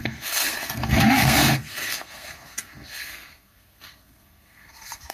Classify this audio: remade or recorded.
remade